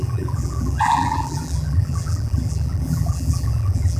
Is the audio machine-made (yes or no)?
yes